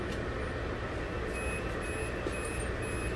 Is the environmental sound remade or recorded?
recorded